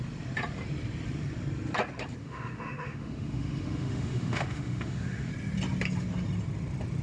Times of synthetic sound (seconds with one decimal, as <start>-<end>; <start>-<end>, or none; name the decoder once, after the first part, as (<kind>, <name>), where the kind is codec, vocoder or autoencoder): 2.2-5.3 (autoencoder, DAC-VAE)